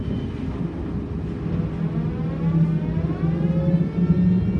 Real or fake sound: real